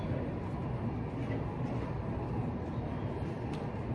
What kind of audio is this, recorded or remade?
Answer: recorded